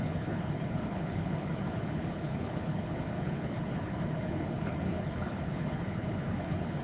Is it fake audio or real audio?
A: fake